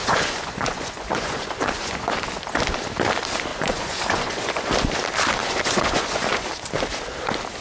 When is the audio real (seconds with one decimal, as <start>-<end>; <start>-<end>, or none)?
2.1-3.5; 4.7-5.4; 6.5-7.6